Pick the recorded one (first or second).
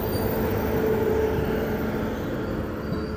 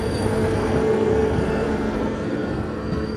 first